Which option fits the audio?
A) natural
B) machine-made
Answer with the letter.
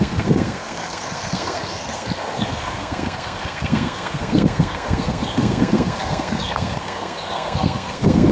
B